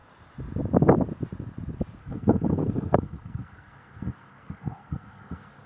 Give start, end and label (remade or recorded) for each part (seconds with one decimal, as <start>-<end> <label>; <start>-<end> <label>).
0.0-2.0 recorded; 2.0-5.7 remade